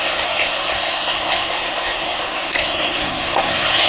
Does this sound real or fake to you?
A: fake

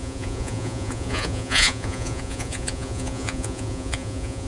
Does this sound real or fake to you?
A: fake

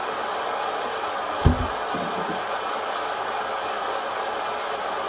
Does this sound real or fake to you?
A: real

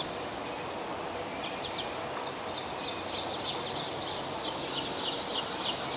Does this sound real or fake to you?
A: real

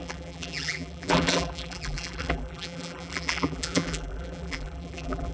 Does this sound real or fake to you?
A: fake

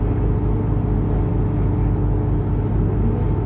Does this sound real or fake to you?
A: real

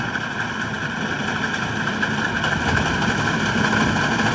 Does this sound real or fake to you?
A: real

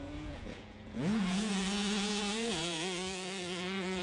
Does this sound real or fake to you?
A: fake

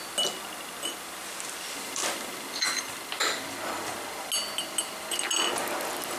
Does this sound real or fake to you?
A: real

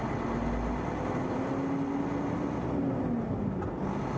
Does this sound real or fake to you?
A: real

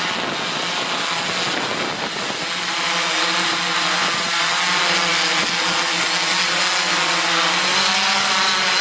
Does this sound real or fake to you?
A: real